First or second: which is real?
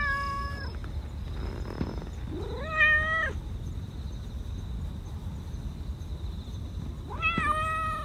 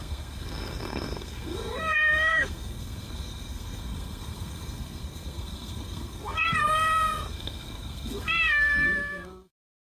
first